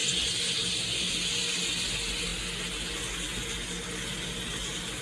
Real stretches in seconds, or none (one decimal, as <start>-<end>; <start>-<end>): 0.0-5.0